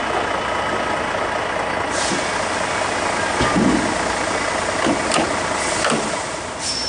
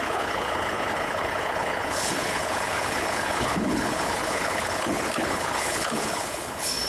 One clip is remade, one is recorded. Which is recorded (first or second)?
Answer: first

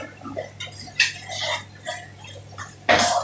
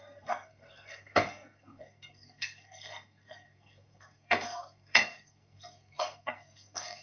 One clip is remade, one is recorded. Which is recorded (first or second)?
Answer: first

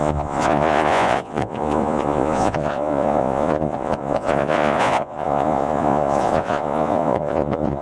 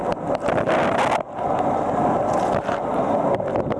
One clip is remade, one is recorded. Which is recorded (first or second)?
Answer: second